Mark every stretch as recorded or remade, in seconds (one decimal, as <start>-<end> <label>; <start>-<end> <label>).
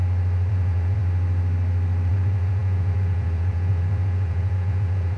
0.0-0.5 recorded; 0.5-1.0 remade; 1.0-2.1 recorded; 2.1-5.2 remade